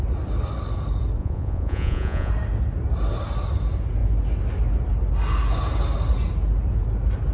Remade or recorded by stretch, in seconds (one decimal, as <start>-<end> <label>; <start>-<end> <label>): 0.0-1.2 recorded; 1.2-2.3 remade; 2.3-7.3 recorded